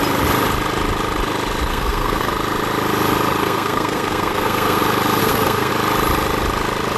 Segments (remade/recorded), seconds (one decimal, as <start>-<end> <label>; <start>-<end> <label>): 0.0-1.7 recorded; 1.7-2.3 remade; 2.3-3.4 recorded; 3.4-4.8 remade; 4.8-5.2 recorded; 5.2-5.7 remade; 5.7-7.0 recorded